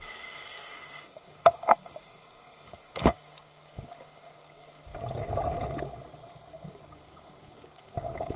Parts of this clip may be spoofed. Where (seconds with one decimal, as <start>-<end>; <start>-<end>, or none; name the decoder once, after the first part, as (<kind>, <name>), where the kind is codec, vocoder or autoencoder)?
0.0-4.9 (codec, DAC); 6.7-8.4